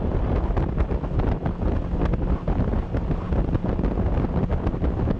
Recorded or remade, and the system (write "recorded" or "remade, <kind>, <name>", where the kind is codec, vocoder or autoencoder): recorded